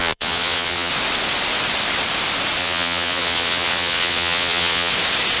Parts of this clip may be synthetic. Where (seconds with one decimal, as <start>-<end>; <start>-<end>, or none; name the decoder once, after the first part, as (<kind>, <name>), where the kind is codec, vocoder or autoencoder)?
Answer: 0.0-0.9 (vocoder, Vocos); 2.6-4.9